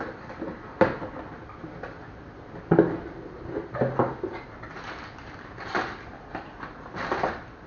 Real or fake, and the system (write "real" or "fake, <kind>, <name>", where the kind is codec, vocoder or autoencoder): real